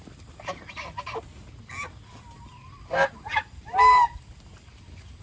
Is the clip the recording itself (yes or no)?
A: yes